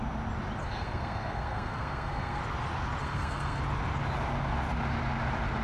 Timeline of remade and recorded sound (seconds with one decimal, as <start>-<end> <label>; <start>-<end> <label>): 0.0-0.6 recorded; 0.6-2.4 remade; 2.4-3.0 recorded; 3.0-3.6 remade; 3.6-5.6 recorded